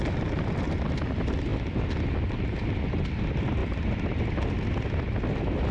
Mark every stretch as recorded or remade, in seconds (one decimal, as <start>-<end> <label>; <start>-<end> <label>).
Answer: 0.0-5.7 recorded